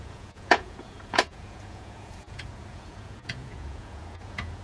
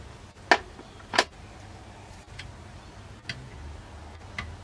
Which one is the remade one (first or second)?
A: first